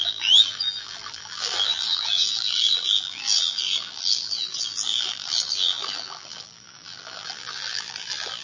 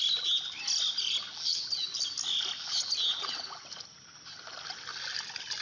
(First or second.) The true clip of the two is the second